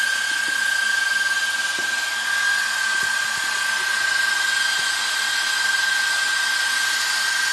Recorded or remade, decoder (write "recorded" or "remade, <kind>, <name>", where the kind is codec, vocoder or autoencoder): recorded